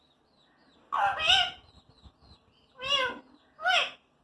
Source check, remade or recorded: recorded